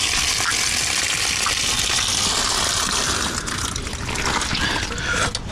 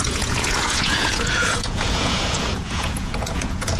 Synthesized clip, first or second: second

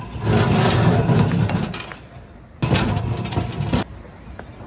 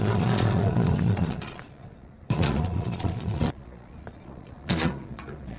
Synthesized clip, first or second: second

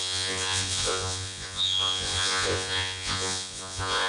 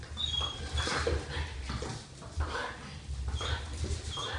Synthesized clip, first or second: first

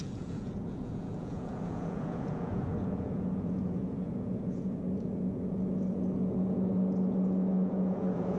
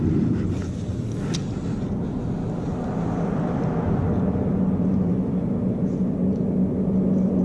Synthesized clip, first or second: first